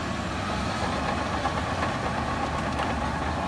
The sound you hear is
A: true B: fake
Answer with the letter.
A